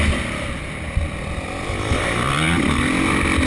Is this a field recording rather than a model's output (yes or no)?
yes